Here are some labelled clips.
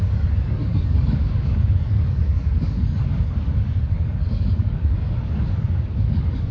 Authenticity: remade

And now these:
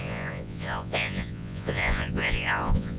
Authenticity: remade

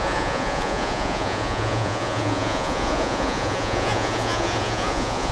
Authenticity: remade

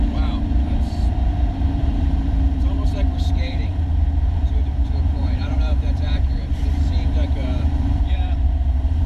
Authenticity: remade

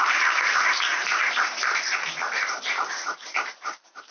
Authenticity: remade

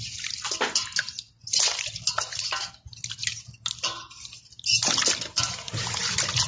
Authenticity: recorded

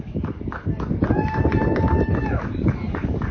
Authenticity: remade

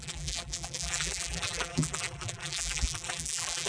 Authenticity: remade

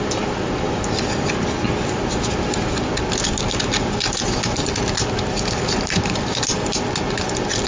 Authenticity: recorded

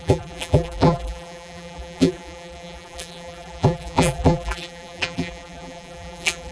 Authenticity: remade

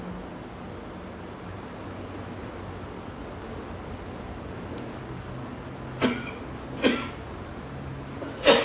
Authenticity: recorded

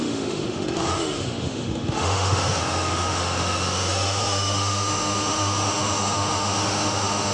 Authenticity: remade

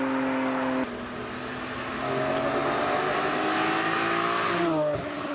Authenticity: recorded